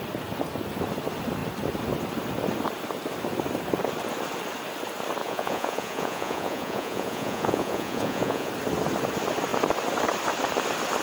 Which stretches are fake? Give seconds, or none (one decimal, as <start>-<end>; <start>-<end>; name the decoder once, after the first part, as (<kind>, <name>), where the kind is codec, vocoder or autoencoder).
5.2-8.5 (vocoder, Vocos)